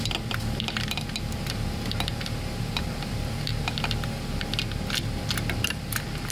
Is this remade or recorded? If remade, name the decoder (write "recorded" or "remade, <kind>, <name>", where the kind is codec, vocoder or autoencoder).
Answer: recorded